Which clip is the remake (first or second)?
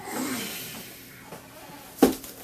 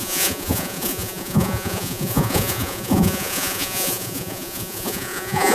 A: second